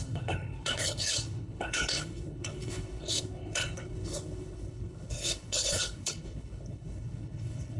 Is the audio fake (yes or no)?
yes